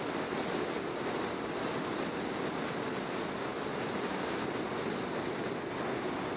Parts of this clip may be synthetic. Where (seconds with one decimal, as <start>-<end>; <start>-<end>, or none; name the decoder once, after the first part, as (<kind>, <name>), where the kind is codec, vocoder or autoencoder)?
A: none